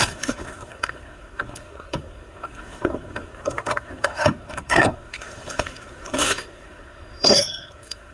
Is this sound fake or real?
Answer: fake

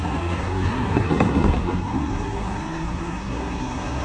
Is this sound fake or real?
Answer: fake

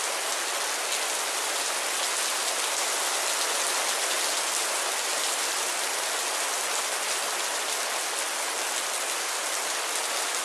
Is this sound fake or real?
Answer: real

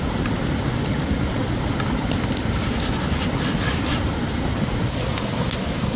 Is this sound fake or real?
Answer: real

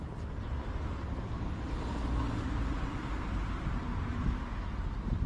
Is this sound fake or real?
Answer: real